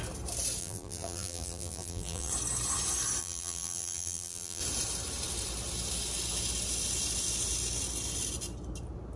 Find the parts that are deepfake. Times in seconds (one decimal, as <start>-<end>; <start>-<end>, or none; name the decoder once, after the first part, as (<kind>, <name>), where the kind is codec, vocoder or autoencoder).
0.6-2.3 (vocoder, BigVGAN v2); 3.2-4.6